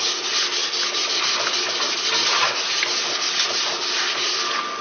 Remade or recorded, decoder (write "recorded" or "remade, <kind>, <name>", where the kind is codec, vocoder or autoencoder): recorded